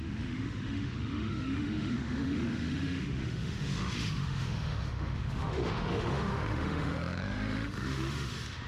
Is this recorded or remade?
remade